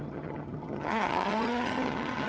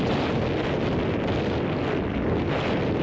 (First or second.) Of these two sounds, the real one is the second